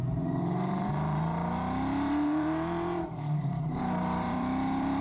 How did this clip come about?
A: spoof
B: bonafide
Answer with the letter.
A